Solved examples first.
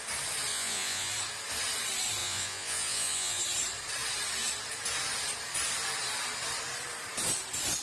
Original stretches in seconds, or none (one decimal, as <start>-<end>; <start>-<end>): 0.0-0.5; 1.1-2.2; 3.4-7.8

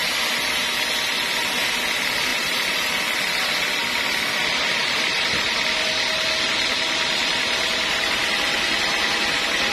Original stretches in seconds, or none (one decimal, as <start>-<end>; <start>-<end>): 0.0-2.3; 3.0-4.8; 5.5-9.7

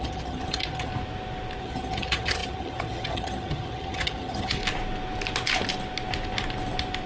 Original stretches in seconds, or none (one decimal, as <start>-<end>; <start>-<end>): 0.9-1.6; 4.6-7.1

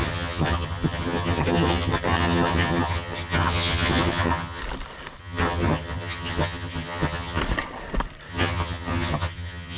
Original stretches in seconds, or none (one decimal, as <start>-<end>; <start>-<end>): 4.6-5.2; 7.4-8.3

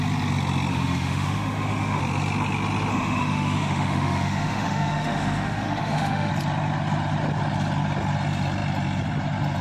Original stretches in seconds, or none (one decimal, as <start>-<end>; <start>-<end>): 0.0-0.7; 2.0-2.9; 6.3-9.6

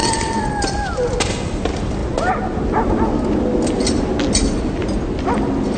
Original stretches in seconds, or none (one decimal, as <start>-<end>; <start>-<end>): 0.5-5.8

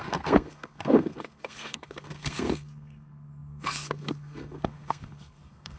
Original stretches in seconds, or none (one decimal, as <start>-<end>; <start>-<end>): none